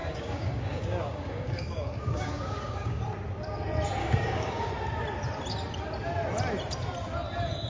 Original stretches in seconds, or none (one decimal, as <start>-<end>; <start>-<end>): 3.0-4.0; 4.7-7.7